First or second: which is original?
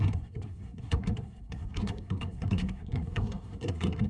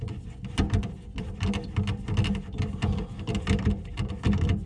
second